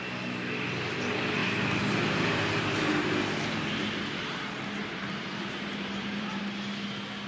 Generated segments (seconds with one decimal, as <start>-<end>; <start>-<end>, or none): 1.4-4.0; 4.8-6.4